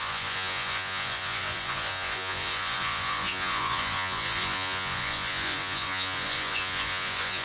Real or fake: fake